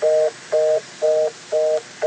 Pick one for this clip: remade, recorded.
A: recorded